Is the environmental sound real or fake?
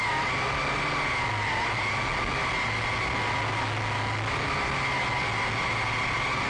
real